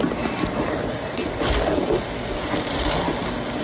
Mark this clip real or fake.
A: real